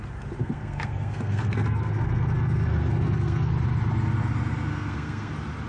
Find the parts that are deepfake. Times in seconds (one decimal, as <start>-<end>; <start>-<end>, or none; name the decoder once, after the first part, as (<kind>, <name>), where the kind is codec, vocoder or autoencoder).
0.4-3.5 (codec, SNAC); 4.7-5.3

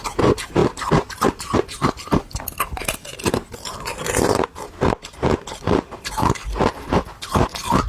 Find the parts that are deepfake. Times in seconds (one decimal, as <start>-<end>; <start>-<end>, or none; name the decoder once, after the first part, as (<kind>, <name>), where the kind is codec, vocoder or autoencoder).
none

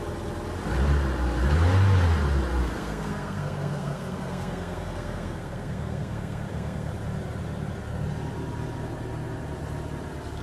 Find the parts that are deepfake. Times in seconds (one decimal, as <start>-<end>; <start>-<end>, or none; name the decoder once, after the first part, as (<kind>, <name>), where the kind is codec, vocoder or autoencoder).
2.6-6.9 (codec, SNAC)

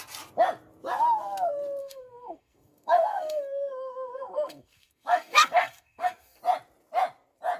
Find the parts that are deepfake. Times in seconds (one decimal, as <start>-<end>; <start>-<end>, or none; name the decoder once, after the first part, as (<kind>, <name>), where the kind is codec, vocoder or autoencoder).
1.8-6.4 (codec, SNAC)